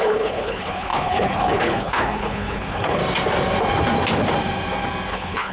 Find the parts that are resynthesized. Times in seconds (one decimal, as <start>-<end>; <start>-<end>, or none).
0.0-3.0; 5.1-5.5